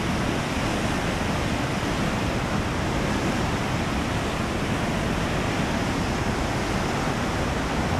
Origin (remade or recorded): recorded